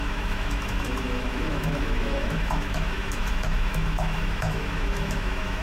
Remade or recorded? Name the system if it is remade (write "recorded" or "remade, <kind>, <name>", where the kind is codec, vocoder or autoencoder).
remade, autoencoder, DAC-VAE